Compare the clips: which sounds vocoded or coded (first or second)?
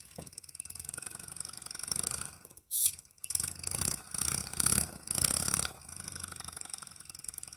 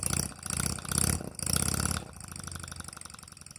first